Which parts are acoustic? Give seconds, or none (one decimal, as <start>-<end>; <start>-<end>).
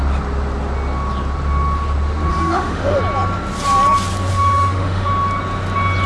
0.0-2.3; 3.0-4.3; 5.1-6.1